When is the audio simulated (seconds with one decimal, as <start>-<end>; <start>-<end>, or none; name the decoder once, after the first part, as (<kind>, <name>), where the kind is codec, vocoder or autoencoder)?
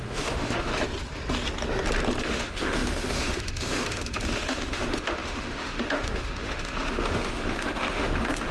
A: 0.0-0.7 (autoencoder, DAC-VAE); 2.2-8.5